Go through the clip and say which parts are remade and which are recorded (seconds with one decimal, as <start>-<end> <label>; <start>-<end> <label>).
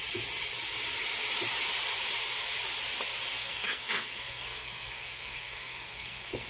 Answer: 0.0-3.4 recorded; 3.4-6.5 remade